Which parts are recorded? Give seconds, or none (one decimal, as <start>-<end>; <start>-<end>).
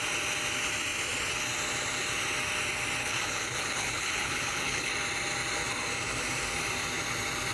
0.0-3.0; 4.9-7.5